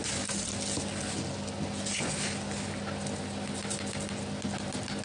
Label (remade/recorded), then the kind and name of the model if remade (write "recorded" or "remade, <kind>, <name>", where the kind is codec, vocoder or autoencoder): recorded